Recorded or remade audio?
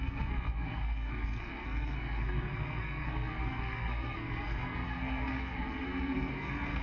remade